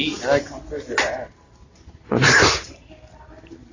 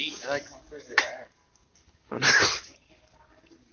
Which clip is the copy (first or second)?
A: second